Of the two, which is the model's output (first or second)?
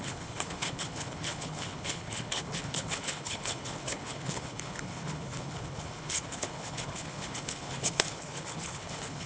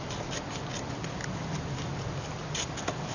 first